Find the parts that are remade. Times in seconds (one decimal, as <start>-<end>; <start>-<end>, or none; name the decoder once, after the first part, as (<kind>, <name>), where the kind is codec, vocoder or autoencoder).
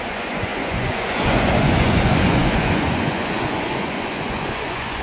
0.0-5.0 (vocoder, Vocos)